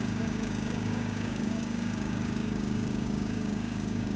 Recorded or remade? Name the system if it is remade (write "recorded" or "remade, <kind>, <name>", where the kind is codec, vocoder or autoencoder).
remade, codec, DAC